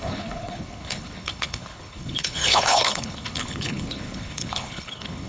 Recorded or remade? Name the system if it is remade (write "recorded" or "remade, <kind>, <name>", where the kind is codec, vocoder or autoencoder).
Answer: remade, codec, HILCodec